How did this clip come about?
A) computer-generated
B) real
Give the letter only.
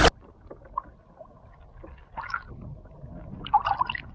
B